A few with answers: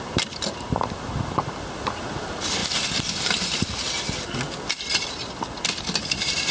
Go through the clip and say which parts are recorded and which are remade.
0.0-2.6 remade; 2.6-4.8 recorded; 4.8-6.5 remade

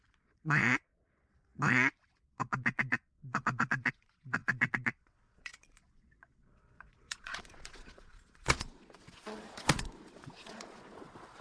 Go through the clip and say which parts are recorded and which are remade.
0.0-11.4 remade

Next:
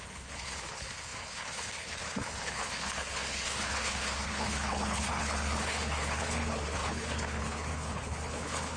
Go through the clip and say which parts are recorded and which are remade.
0.0-8.8 remade

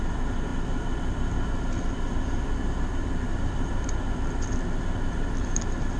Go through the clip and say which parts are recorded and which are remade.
0.0-6.0 recorded

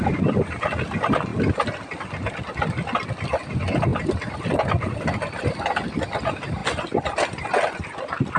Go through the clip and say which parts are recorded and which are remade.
0.0-3.9 recorded; 3.9-5.4 remade; 5.4-8.4 recorded

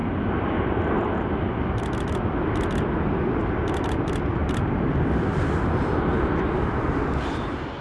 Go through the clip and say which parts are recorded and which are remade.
0.0-7.8 recorded

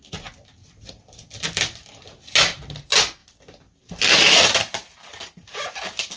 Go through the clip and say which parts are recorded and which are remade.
0.0-0.6 recorded; 0.6-2.3 remade; 2.3-3.2 recorded; 3.2-4.3 remade; 4.3-6.2 recorded

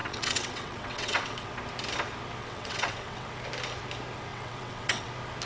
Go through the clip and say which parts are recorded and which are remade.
0.0-1.5 remade; 1.5-2.4 recorded; 2.4-3.3 remade; 3.3-4.3 recorded; 4.3-5.1 remade; 5.1-5.5 recorded